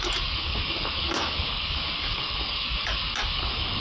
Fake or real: fake